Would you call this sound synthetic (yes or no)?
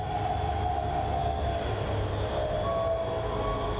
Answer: no